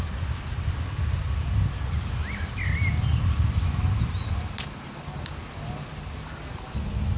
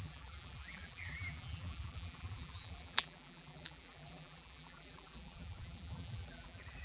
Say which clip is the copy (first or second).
second